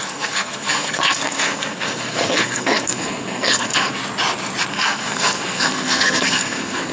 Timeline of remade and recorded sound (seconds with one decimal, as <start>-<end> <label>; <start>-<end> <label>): 0.0-4.0 remade; 4.0-4.7 recorded; 4.7-6.9 remade